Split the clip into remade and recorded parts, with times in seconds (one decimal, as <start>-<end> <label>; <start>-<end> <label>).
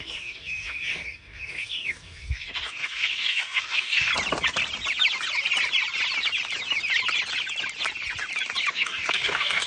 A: 0.0-4.1 remade; 4.1-8.7 recorded; 8.7-9.7 remade